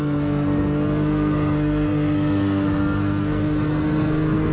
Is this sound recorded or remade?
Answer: remade